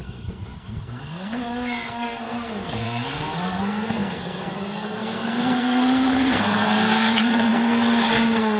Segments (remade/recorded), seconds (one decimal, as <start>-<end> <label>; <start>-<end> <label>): 0.0-8.6 remade